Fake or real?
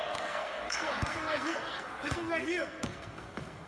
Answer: fake